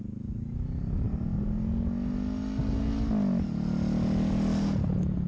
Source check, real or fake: real